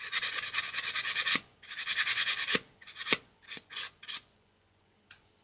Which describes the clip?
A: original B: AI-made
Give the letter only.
B